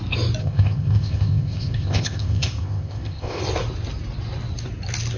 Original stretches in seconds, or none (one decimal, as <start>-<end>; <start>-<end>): 0.0-0.4; 3.4-5.2